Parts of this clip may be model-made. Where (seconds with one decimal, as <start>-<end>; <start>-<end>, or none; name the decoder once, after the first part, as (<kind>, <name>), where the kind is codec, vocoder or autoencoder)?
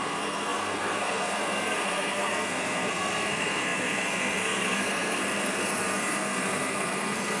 0.0-7.4 (codec, SNAC)